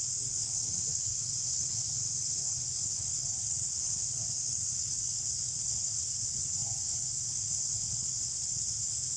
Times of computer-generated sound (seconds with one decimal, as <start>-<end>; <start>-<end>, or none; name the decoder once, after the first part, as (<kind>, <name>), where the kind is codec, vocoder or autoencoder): 0.0-9.2 (codec, HILCodec)